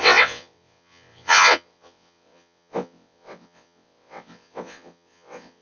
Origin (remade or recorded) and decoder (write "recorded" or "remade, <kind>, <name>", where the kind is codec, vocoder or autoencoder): remade, vocoder, WaveNeXt